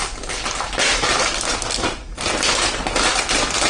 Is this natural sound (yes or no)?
yes